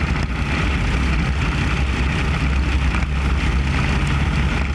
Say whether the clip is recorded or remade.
recorded